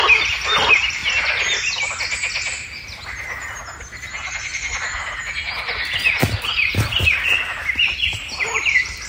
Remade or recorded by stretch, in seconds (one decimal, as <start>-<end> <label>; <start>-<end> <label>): 0.0-6.2 recorded; 6.2-6.9 remade; 6.9-8.0 recorded; 8.0-9.1 remade